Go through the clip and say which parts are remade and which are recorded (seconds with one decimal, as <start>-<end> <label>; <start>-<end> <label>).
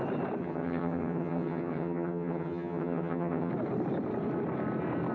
0.0-0.4 recorded; 0.4-3.5 remade; 3.5-5.1 recorded